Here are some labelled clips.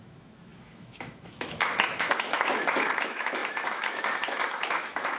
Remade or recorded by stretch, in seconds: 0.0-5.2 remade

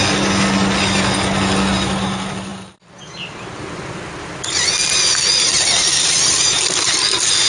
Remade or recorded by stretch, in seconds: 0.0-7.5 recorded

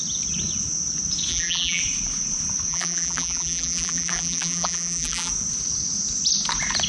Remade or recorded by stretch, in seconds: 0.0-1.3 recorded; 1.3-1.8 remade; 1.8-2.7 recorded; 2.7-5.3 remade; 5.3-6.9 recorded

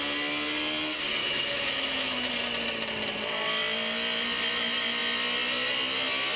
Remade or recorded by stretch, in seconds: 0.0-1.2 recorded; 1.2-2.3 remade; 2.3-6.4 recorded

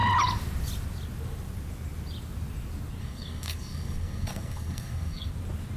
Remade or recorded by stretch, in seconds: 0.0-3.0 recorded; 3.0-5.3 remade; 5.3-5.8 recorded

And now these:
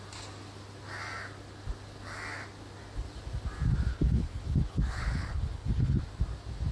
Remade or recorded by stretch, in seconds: 0.0-3.9 recorded; 3.9-6.0 remade; 6.0-6.7 recorded

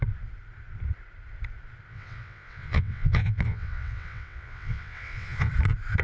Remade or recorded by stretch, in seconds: 0.0-1.9 recorded; 1.9-5.5 remade; 5.5-6.0 recorded